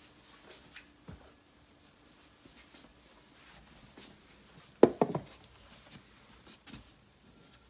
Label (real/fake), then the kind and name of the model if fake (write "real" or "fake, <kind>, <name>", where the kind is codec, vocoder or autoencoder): real